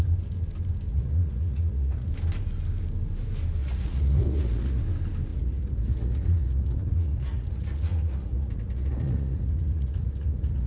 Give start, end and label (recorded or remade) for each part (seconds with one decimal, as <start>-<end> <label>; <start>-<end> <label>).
0.0-0.9 recorded; 0.9-2.1 remade; 2.1-3.6 recorded; 3.6-4.8 remade; 4.8-5.3 recorded; 5.3-10.7 remade

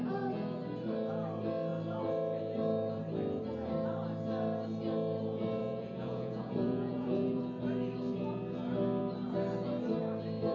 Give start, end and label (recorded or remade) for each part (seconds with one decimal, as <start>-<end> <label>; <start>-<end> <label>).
0.0-5.6 recorded; 5.6-7.4 remade; 7.4-10.5 recorded

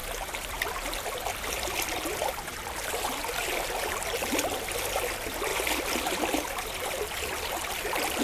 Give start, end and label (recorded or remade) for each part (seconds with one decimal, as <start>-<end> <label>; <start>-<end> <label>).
0.0-8.2 recorded

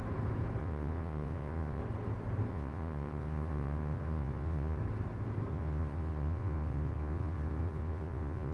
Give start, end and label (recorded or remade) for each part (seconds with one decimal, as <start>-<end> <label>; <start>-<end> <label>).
0.0-0.6 recorded; 0.6-1.8 remade; 1.8-2.5 recorded; 2.5-4.8 remade; 4.8-5.5 recorded; 5.5-8.5 remade

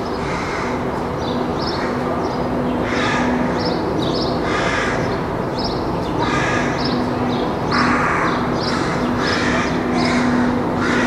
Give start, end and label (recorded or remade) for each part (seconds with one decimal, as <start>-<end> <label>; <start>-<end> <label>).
0.0-11.1 recorded

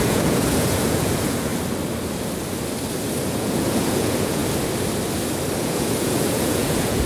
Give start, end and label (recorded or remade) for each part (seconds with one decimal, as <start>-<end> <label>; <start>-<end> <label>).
0.0-1.5 remade; 1.5-3.3 recorded; 3.3-4.4 remade; 4.4-5.6 recorded; 5.6-7.1 remade

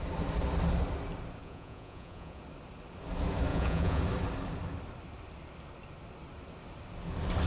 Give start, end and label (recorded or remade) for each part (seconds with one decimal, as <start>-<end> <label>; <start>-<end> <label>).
0.0-1.4 recorded; 1.4-2.4 remade; 2.4-3.5 recorded; 3.5-4.0 remade; 4.0-7.5 recorded

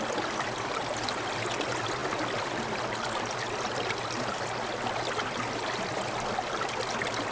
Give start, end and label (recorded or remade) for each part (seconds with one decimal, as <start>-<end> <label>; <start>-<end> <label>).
0.0-7.3 recorded